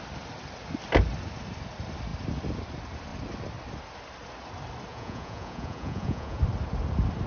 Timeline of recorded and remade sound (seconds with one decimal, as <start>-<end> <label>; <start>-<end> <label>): 0.0-4.9 recorded; 4.9-6.4 remade; 6.4-7.3 recorded